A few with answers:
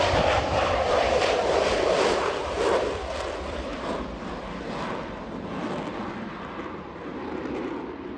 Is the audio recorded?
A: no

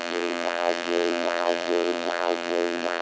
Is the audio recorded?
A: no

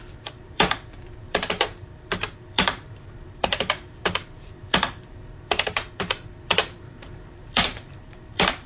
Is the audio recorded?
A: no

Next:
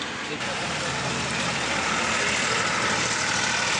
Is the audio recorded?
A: no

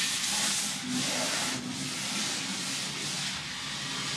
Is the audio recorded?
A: yes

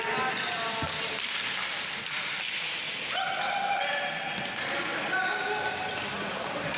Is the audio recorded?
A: yes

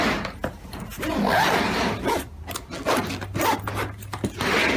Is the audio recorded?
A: yes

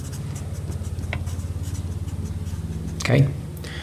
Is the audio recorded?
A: yes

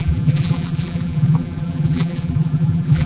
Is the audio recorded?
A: no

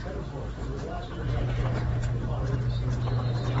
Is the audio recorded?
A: no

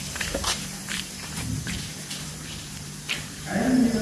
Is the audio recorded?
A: no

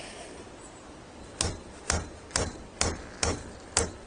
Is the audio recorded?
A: no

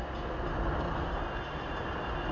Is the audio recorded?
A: yes